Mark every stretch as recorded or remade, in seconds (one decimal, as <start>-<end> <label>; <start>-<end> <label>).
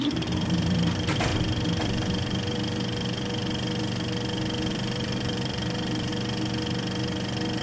0.0-1.3 remade; 1.3-4.7 recorded; 4.7-6.1 remade; 6.1-7.6 recorded